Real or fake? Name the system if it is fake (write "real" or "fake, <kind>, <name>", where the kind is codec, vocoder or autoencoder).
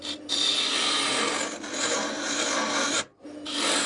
real